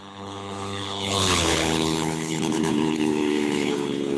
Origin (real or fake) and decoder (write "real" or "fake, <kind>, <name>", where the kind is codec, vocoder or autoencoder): fake, codec, HILCodec